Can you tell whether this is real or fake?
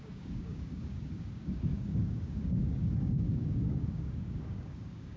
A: fake